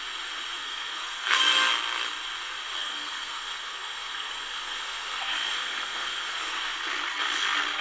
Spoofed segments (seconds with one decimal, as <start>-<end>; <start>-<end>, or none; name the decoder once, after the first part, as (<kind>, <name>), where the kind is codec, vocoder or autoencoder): 0.6-1.4 (codec, SNAC); 2.8-6.5